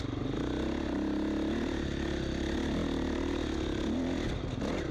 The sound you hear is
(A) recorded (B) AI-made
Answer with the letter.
A